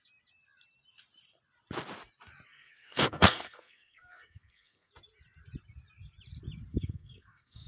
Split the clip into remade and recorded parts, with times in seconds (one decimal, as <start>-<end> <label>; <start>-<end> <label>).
0.0-2.5 recorded; 2.5-4.9 remade; 4.9-6.7 recorded; 6.7-7.7 remade